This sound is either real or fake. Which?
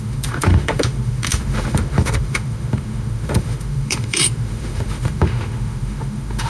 fake